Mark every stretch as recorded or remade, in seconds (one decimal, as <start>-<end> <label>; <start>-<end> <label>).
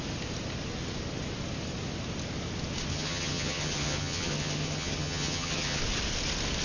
0.0-2.9 recorded; 2.9-5.8 remade; 5.8-6.6 recorded